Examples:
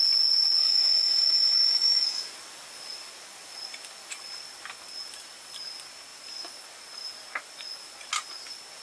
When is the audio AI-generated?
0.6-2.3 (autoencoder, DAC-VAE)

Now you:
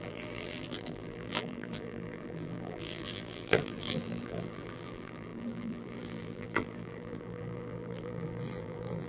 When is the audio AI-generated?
0.0-9.1 (vocoder, BigVGAN v2)

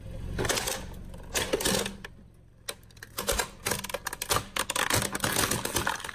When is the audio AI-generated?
none

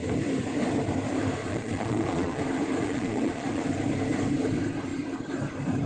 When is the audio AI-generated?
1.4-2.4 (vocoder, Vocos); 2.8-3.6

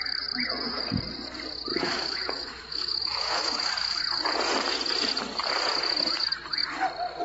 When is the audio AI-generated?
1.7-4.0 (autoencoder, DAC-VAE)

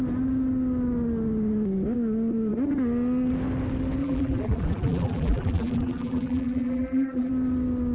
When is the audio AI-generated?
4.0-7.3 (vocoder, BigVGAN v2)

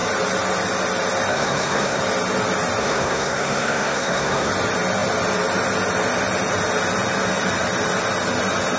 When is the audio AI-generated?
1.3-2.0 (codec, SNAC); 2.8-4.5